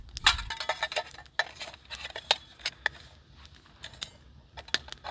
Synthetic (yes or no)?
no